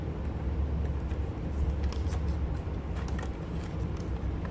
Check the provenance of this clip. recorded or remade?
recorded